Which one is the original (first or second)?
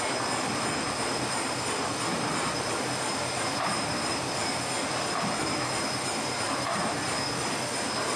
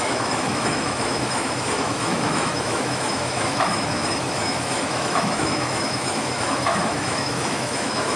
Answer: first